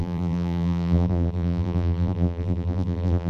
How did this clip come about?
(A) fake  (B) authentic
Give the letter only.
A